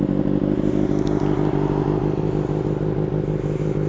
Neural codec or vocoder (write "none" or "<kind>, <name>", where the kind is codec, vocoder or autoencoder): none